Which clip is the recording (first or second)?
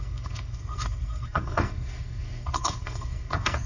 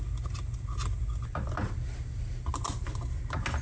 second